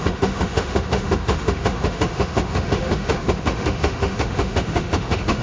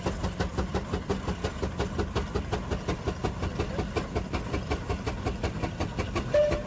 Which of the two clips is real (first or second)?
second